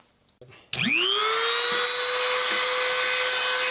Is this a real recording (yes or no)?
yes